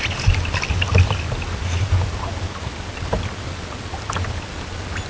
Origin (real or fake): real